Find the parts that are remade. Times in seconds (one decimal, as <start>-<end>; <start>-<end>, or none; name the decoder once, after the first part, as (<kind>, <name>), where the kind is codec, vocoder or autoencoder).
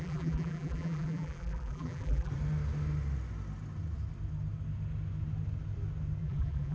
0.0-2.3 (vocoder, BigVGAN v2); 6.2-6.7